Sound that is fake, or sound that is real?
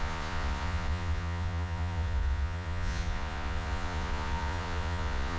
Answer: fake